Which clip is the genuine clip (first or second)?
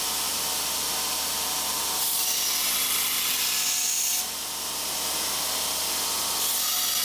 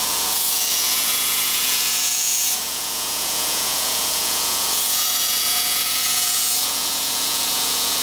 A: first